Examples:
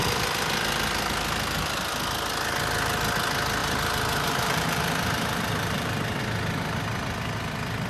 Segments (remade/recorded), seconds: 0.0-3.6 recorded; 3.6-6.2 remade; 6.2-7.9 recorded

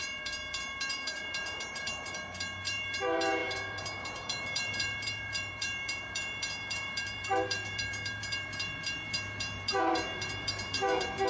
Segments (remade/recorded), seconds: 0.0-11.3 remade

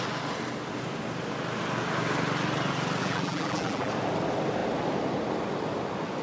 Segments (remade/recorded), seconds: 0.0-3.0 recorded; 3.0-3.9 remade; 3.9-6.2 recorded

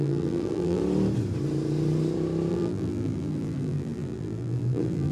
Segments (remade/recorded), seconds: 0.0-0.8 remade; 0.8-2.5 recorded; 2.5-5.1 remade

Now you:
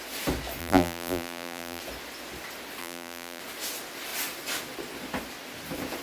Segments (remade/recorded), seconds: 0.0-0.6 recorded; 0.6-1.8 remade; 1.8-2.8 recorded; 2.8-3.4 remade; 3.4-6.0 recorded